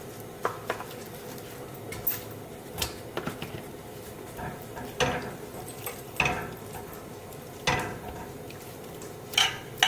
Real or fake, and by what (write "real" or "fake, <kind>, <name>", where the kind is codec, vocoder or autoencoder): real